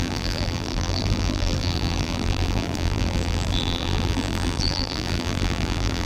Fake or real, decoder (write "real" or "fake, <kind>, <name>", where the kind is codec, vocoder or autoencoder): fake, vocoder, BigVGAN v2